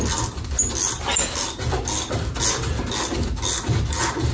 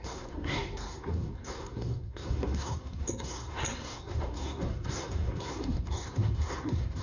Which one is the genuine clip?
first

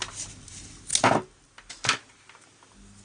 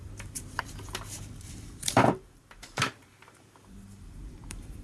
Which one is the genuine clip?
first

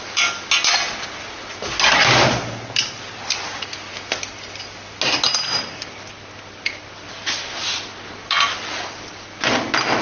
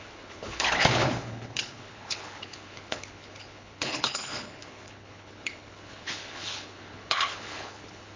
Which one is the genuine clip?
first